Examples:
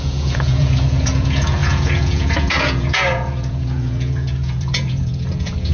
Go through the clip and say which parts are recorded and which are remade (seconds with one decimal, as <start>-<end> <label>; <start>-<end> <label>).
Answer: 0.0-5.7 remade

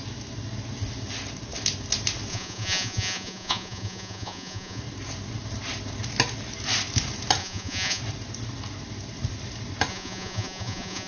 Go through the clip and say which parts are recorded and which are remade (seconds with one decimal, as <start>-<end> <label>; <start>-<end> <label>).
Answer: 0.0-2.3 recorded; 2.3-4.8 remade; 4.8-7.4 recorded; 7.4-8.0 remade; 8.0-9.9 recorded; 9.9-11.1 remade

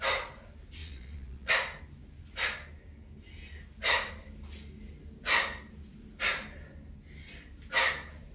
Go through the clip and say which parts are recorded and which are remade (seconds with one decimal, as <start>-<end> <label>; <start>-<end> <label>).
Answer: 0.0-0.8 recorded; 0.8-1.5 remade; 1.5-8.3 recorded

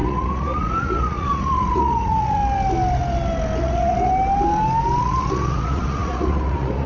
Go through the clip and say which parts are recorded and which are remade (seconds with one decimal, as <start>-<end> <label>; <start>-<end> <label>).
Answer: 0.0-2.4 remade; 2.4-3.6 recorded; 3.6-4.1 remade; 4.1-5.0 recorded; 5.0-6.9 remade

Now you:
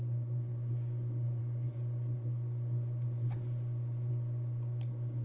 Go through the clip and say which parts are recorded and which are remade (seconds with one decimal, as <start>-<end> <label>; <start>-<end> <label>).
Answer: 0.0-5.2 recorded

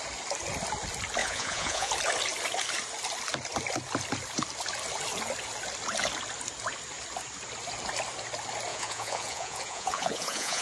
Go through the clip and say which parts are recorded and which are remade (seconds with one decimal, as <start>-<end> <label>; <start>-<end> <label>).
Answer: 0.0-1.2 recorded; 1.2-1.9 remade; 1.9-8.7 recorded; 8.7-10.6 remade

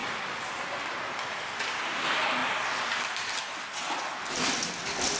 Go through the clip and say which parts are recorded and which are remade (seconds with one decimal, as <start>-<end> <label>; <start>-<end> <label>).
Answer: 0.0-5.2 recorded

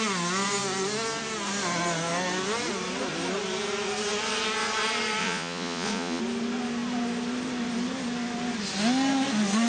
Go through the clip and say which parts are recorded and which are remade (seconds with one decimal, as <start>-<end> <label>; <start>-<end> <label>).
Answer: 0.0-5.2 recorded; 5.2-6.2 remade; 6.2-9.7 recorded